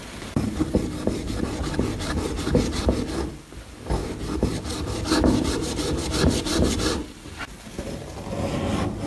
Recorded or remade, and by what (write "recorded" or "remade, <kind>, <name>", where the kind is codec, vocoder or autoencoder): recorded